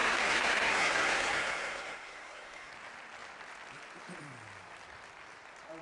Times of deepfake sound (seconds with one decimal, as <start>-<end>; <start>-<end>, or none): 0.0-2.7